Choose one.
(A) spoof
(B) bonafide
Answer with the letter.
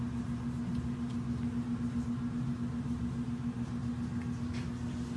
B